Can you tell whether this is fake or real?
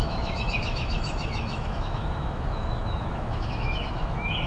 fake